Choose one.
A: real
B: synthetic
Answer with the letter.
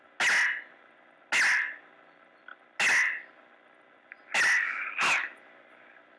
A